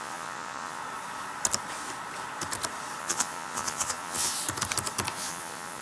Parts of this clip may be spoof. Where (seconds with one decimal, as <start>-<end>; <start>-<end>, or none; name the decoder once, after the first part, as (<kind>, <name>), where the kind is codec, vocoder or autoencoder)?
0.0-0.8 (vocoder, Vocos); 3.0-4.3; 5.1-5.8